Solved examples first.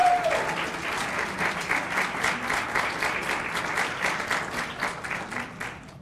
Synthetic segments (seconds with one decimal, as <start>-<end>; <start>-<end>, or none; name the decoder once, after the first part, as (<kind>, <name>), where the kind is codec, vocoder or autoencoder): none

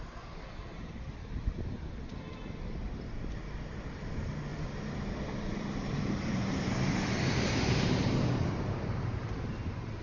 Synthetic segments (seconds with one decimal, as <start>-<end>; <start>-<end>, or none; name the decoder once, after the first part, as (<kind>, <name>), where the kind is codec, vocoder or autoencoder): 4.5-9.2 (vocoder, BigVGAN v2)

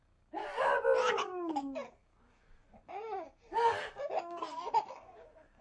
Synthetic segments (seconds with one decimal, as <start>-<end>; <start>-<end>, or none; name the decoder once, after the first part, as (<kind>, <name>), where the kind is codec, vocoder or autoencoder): 0.0-0.4 (codec, DAC); 1.1-5.6

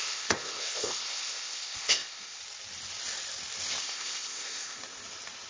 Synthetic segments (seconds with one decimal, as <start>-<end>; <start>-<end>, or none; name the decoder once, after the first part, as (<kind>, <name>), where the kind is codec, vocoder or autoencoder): 0.0-2.4 (codec, ZipCodec); 3.8-4.8

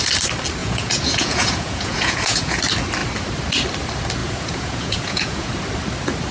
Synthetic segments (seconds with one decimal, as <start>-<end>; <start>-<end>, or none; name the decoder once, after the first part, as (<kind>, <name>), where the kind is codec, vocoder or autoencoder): 0.6-2.6 (vocoder, Vocos); 4.2-5.5